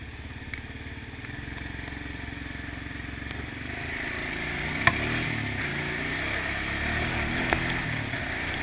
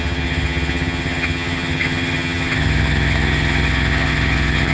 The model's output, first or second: second